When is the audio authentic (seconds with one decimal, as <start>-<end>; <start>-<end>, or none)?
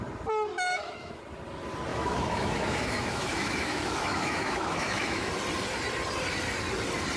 0.0-0.5; 1.2-1.9; 5.3-7.2